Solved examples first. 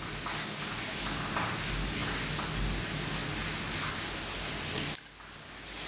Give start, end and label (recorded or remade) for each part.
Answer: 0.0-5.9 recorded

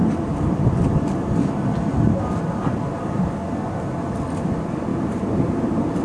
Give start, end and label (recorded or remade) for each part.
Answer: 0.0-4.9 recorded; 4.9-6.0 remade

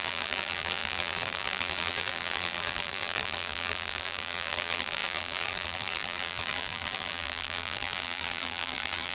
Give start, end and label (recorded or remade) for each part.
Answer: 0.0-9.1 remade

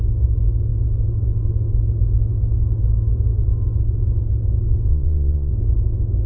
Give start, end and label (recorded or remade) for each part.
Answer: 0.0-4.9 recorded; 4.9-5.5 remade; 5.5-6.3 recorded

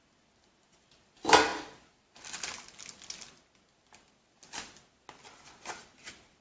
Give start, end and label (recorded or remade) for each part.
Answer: 0.0-6.4 recorded

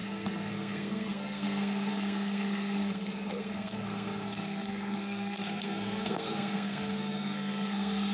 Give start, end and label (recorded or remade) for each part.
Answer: 0.0-8.1 remade